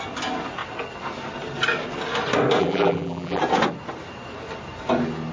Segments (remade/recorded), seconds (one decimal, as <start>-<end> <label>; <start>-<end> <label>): 0.0-2.6 recorded; 2.6-3.4 remade; 3.4-5.3 recorded